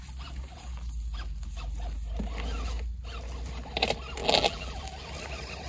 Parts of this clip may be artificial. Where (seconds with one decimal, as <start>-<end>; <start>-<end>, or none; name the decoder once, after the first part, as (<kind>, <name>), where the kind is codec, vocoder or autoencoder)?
4.2-4.8 (vocoder, BigVGAN v2)